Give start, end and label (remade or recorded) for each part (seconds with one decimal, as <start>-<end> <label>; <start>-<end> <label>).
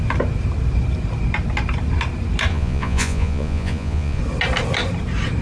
0.0-2.5 recorded; 2.5-4.2 remade; 4.2-5.4 recorded